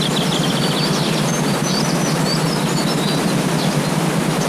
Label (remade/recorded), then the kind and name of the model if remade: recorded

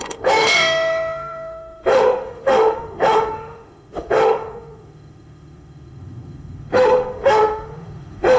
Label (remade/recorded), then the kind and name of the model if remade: remade, autoencoder, DAC-VAE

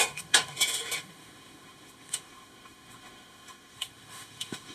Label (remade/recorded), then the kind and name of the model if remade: remade, autoencoder, DAC-VAE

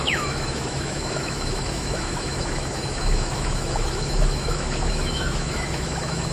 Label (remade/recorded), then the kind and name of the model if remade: remade, autoencoder, DAC-VAE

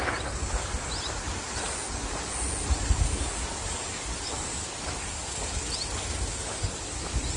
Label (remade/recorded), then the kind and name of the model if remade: recorded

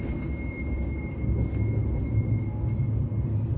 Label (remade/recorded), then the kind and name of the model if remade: recorded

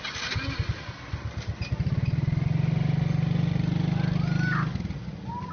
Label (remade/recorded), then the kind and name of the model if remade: recorded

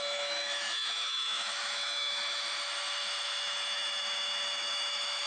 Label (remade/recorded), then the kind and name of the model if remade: remade, autoencoder, DAC-VAE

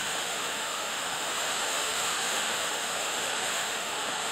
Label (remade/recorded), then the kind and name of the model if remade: remade, autoencoder, DAC-VAE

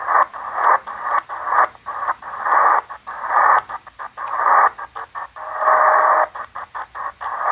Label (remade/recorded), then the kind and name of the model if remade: recorded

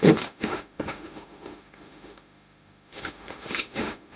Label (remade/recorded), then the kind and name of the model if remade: remade, autoencoder, DAC-VAE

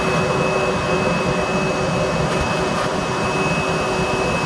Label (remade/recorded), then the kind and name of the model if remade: recorded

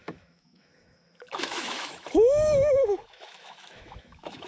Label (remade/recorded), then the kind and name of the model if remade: remade, autoencoder, DAC-VAE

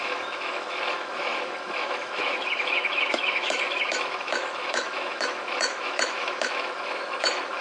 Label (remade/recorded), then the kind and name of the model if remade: remade, autoencoder, DAC-VAE